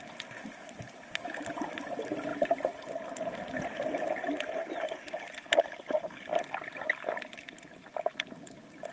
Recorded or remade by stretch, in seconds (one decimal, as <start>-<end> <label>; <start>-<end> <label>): 0.0-8.9 recorded